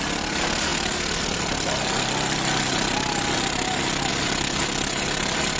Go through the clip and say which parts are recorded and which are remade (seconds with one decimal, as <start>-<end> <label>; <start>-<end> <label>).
0.0-5.6 recorded